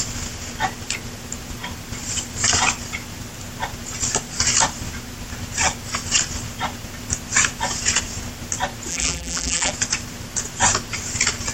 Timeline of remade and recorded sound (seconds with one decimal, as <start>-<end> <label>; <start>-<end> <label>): 0.0-8.9 recorded; 8.9-9.7 remade; 9.7-11.5 recorded